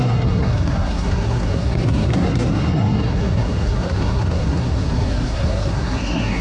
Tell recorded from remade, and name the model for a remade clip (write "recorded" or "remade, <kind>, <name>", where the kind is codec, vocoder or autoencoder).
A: remade, codec, SNAC